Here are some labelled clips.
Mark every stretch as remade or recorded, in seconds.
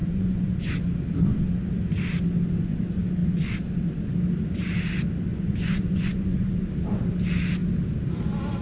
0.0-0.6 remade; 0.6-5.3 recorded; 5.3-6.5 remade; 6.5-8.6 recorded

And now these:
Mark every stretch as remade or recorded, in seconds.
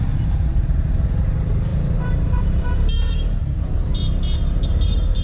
0.0-4.0 remade; 4.0-4.5 recorded; 4.5-5.2 remade